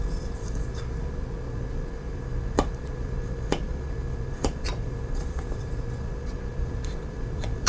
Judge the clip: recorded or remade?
remade